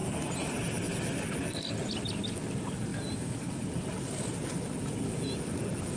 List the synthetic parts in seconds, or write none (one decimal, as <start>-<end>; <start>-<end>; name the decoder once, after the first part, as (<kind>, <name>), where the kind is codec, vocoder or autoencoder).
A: none